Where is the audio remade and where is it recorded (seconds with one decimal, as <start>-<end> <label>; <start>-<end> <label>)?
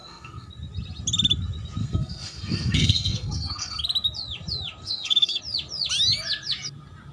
0.0-0.5 remade; 0.5-1.8 recorded; 1.8-3.8 remade; 3.8-4.8 recorded; 4.8-5.4 remade; 5.4-7.1 recorded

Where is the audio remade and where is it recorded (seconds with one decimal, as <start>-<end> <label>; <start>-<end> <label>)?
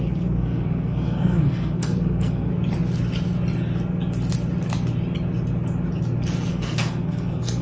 0.0-2.5 remade; 2.5-6.5 recorded; 6.5-7.6 remade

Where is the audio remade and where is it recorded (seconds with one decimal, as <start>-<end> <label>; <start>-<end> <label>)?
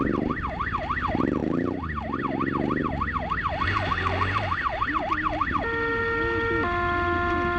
0.0-7.6 recorded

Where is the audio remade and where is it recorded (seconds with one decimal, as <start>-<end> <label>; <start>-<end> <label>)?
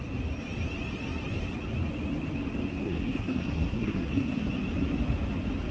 0.0-2.7 recorded; 2.7-4.5 remade; 4.5-5.7 recorded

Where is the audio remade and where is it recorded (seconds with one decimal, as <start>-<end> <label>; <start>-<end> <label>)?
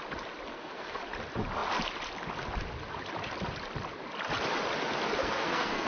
0.0-0.5 recorded; 0.5-1.0 remade; 1.0-5.2 recorded; 5.2-5.9 remade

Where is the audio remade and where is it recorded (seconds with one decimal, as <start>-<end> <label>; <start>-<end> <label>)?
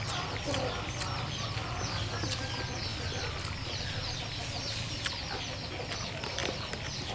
0.0-7.1 recorded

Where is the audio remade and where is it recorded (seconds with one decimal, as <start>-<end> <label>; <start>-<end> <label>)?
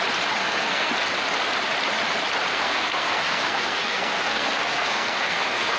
0.0-0.4 recorded; 0.4-0.9 remade; 0.9-2.5 recorded; 2.5-5.8 remade